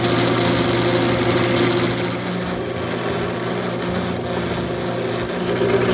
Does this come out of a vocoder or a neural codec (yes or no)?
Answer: no